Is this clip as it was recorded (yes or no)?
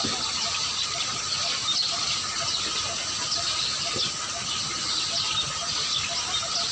yes